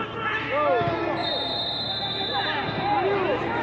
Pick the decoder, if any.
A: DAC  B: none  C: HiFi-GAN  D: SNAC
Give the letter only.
B